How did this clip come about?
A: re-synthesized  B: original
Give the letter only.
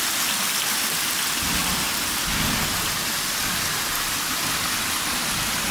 B